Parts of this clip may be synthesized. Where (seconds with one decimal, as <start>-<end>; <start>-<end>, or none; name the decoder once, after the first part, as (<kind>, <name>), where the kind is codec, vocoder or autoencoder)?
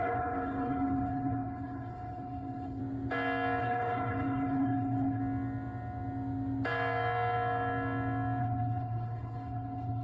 0.0-2.8 (codec, HILCodec); 3.6-5.2; 8.4-10.0